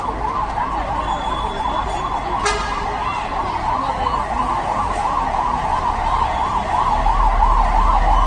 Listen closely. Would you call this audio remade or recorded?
recorded